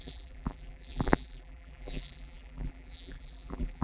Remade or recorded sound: remade